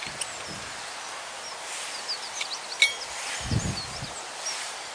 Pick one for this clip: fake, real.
real